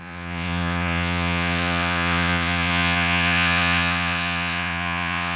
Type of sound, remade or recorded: remade